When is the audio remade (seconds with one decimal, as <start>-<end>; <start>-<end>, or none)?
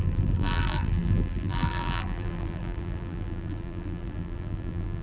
0.0-5.0